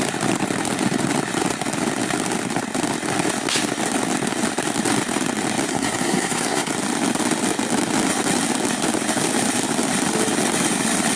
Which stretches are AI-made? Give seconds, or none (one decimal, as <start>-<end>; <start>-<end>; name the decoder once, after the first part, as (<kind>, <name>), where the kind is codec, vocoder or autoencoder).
5.7-6.7 (codec, SNAC)